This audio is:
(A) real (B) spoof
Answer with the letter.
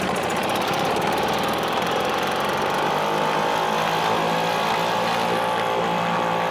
A